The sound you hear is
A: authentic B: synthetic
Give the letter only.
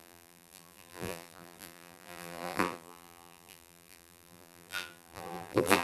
B